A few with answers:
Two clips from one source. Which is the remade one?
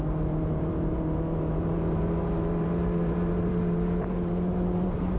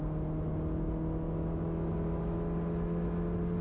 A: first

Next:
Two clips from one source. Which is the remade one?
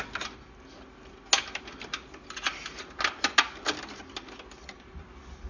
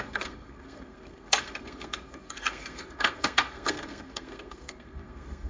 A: second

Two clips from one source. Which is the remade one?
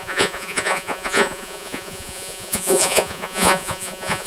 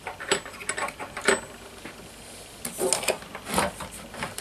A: first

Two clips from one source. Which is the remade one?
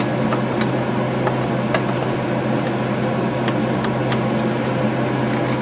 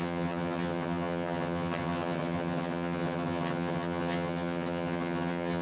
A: second